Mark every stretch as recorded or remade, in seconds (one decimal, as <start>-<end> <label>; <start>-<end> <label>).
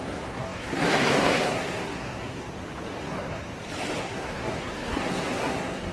0.0-2.5 remade; 2.5-3.0 recorded; 3.0-3.5 remade; 3.5-4.0 recorded; 4.0-5.9 remade